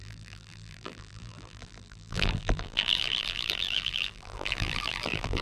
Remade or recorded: remade